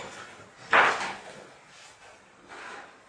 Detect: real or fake real